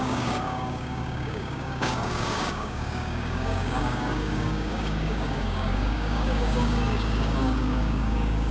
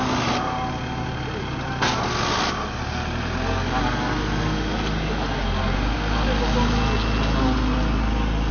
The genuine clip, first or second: second